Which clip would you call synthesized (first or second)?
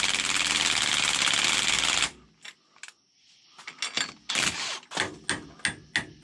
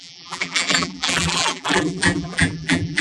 second